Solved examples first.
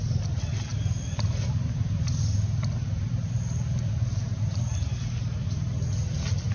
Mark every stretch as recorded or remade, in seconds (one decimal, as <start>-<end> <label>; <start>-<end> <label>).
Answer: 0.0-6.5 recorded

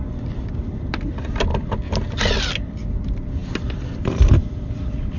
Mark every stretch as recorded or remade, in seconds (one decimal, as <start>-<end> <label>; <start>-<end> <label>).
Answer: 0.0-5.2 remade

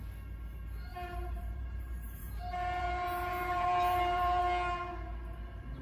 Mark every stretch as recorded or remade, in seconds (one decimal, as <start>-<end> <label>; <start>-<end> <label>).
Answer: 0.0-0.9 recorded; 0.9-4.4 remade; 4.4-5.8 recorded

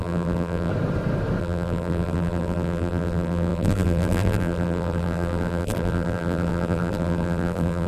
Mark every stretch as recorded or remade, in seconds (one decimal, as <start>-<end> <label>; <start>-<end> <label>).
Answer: 0.0-0.7 remade; 0.7-1.4 recorded; 1.4-7.9 remade

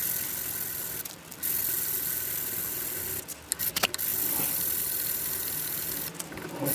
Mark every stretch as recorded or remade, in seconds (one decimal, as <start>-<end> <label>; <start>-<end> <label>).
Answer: 0.0-6.7 recorded

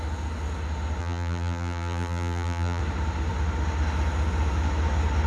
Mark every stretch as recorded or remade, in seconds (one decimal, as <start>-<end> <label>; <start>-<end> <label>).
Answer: 0.0-1.0 recorded; 1.0-2.8 remade; 2.8-5.3 recorded

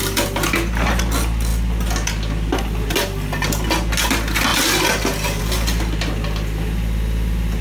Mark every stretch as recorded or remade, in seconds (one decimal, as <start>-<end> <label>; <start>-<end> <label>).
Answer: 0.0-7.6 recorded

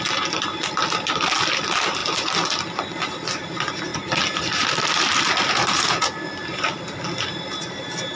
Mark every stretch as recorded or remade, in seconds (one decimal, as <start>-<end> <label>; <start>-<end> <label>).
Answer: 0.0-8.2 recorded